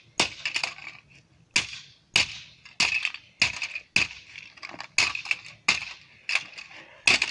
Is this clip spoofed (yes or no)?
no